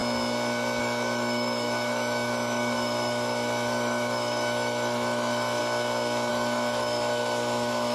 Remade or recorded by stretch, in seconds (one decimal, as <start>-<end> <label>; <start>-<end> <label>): 0.0-0.8 recorded; 0.8-5.6 remade; 5.6-6.3 recorded; 6.3-7.9 remade